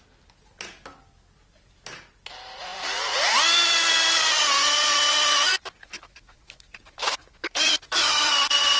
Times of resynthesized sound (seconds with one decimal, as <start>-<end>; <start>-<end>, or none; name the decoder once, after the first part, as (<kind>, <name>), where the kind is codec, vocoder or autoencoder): 5.8-8.3 (autoencoder, DAC-VAE)